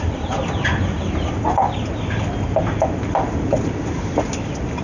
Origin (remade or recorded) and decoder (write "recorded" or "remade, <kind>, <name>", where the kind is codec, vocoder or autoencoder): recorded